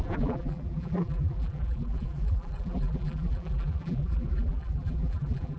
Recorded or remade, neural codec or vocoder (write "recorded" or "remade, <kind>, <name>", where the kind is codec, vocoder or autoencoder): remade, vocoder, BigVGAN v2